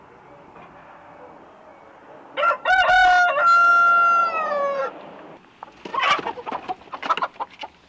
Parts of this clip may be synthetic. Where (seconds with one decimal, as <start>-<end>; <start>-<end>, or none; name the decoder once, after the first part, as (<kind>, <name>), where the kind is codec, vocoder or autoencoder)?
4.2-4.8 (vocoder, Vocos)